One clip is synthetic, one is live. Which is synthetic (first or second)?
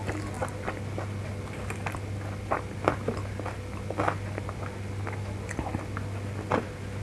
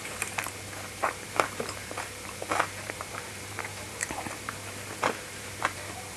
second